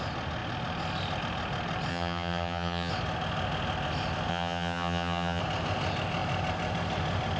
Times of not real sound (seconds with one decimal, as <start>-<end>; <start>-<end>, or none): 1.9-2.9; 4.3-5.4